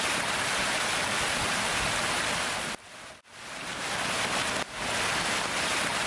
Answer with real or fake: real